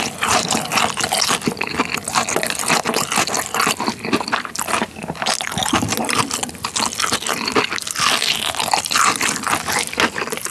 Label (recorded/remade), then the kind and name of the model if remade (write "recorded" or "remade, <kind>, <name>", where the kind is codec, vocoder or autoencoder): recorded